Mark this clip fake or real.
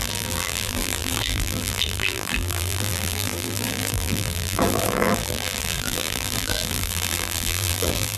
fake